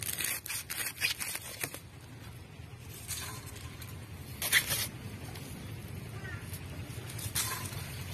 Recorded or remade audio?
recorded